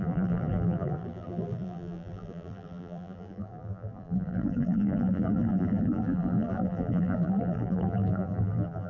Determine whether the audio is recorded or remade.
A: remade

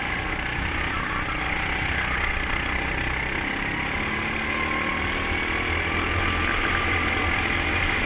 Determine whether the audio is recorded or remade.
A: recorded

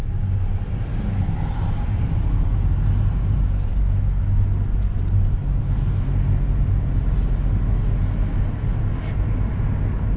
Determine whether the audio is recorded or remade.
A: recorded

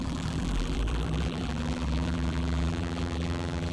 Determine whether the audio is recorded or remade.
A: remade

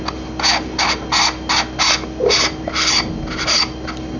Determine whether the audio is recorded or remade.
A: recorded